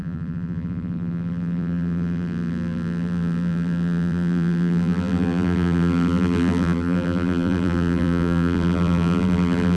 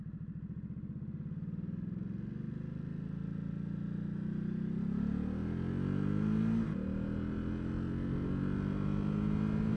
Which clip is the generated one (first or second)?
first